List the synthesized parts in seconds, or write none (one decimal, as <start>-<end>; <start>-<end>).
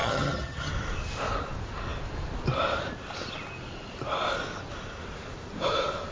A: 0.0-0.7